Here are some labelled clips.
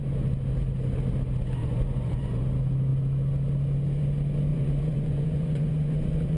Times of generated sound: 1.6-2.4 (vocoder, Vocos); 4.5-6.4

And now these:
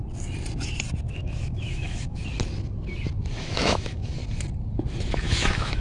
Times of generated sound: 1.1-2.2 (autoencoder, DAC-VAE); 3.4-4.2; 5.1-5.8

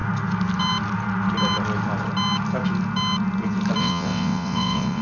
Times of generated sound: 3.8-5.0 (vocoder, WaveNeXt)

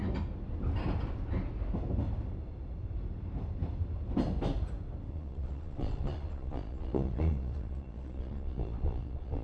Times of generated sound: 5.1-9.4 (vocoder, Vocos)

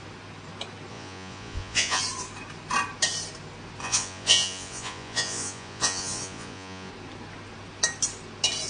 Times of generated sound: 0.9-2.0 (vocoder, Vocos); 3.8-6.9

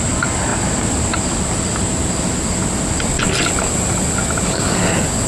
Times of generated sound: none

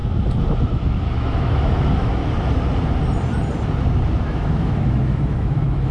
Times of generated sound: 0.6-2.2 (autoencoder, DAC-VAE); 4.2-5.9

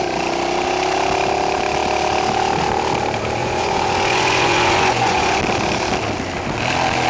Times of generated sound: 3.4-5.4 (vocoder, Vocos)